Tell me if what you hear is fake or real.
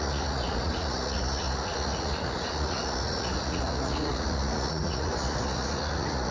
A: fake